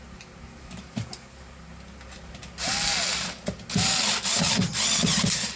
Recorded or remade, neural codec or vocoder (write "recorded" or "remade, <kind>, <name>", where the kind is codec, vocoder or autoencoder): recorded